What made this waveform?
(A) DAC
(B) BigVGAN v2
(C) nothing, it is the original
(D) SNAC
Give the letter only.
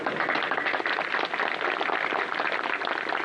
C